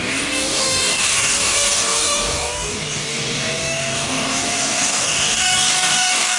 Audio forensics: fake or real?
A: fake